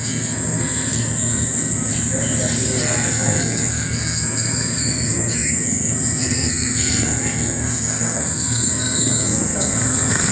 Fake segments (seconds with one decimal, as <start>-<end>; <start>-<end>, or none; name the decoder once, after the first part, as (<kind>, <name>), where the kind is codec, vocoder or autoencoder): 0.0-1.9 (codec, SNAC); 2.8-10.3